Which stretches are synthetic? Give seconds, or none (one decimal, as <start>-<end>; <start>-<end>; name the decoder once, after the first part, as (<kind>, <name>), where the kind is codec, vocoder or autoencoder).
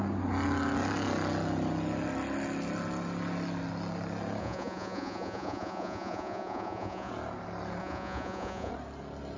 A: 4.4-7.1 (vocoder, Vocos); 7.8-8.7